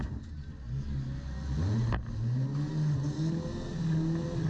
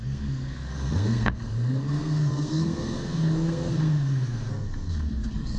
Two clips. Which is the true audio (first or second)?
first